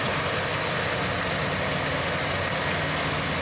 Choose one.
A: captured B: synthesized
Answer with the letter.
A